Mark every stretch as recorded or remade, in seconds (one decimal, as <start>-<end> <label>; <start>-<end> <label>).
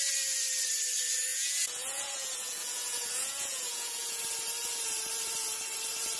0.0-1.3 recorded; 1.3-4.2 remade; 4.2-6.2 recorded